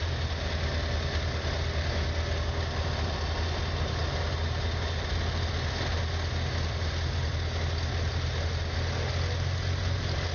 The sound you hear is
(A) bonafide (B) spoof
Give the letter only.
A